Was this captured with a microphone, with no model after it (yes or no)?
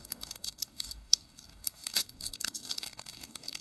no